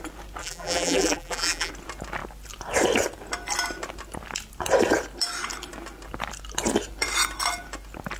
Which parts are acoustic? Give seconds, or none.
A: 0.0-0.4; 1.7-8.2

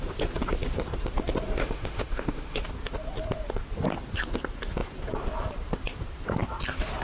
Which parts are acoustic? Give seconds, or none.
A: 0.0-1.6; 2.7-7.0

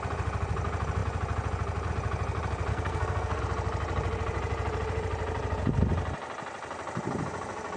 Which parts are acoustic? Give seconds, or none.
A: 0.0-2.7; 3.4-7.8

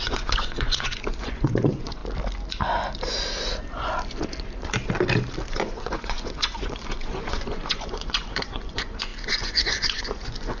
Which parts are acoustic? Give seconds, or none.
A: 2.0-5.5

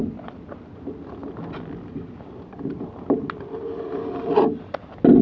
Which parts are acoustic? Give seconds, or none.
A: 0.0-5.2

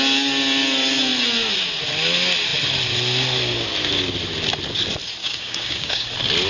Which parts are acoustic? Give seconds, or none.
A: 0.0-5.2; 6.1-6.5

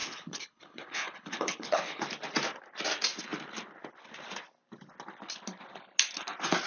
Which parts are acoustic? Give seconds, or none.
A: 2.0-6.7

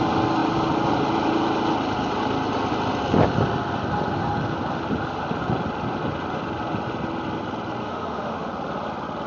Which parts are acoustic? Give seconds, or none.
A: 0.0-7.8; 8.5-9.3